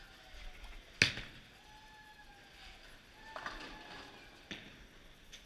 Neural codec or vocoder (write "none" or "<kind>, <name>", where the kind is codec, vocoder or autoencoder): none